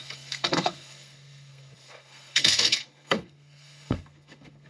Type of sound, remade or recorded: remade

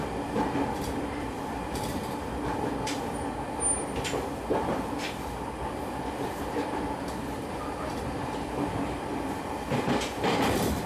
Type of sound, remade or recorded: remade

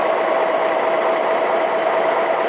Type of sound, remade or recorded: recorded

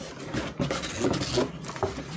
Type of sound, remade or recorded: recorded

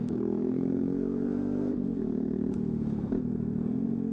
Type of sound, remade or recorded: remade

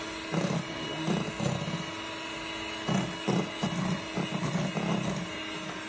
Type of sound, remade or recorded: recorded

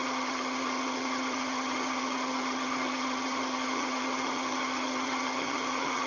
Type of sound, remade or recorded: remade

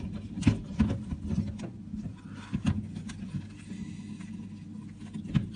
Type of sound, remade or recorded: recorded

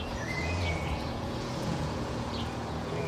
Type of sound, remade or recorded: remade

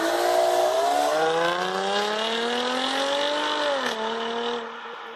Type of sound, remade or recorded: recorded